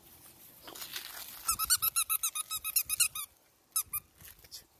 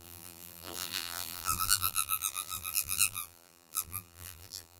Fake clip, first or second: second